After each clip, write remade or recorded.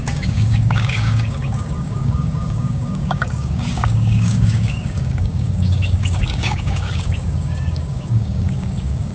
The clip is remade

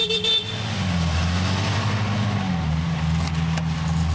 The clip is recorded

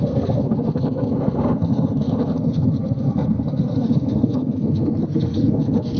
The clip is remade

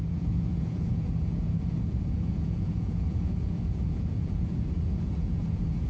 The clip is remade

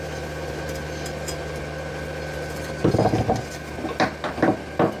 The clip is recorded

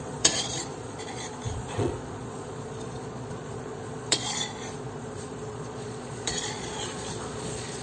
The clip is remade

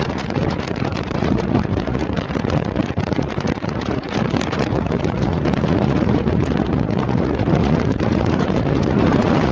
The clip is remade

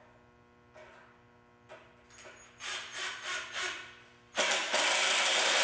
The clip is recorded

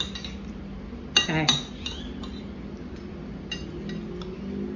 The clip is recorded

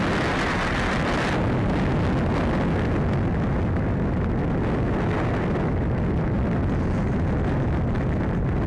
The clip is recorded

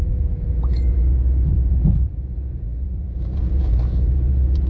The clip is remade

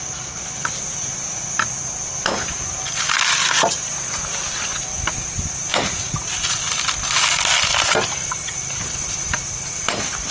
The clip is recorded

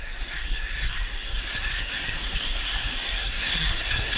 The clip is remade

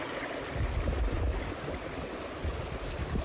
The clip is recorded